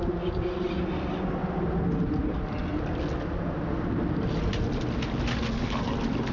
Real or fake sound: real